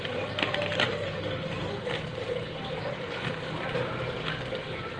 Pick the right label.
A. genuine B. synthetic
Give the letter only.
A